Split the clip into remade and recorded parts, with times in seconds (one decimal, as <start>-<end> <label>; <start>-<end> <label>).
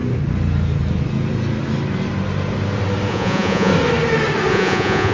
0.0-3.1 recorded; 3.1-3.7 remade; 3.7-4.5 recorded; 4.5-5.1 remade